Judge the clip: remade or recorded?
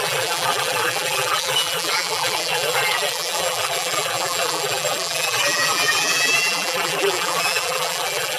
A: remade